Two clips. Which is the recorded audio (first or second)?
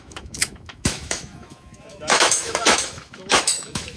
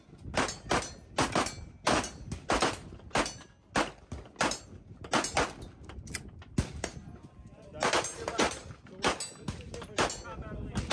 second